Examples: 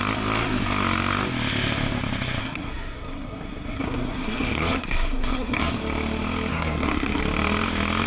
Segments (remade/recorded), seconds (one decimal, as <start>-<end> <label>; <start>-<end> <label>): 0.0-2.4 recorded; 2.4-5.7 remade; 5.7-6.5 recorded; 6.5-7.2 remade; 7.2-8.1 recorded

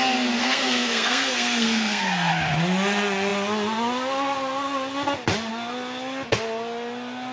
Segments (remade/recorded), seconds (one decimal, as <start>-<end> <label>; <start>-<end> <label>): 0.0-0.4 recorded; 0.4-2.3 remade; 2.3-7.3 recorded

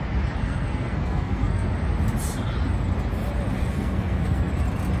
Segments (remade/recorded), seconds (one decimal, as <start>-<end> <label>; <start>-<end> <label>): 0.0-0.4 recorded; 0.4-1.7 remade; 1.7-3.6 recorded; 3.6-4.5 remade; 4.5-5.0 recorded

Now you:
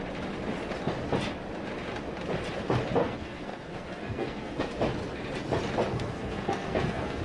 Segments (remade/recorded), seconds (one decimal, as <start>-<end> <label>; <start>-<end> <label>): 0.0-3.0 recorded; 3.0-4.8 remade; 4.8-5.9 recorded; 5.9-7.2 remade

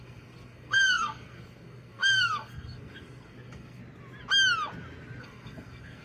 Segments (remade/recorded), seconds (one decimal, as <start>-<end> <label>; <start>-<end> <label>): 0.0-3.8 remade; 3.8-5.2 recorded; 5.2-6.0 remade

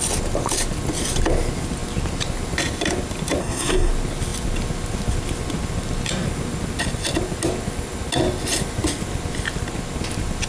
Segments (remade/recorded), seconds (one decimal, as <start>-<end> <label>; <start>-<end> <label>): 0.0-3.4 recorded; 3.4-3.9 remade; 3.9-10.5 recorded

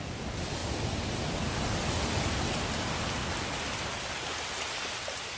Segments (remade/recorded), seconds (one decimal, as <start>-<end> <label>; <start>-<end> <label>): 0.0-5.4 recorded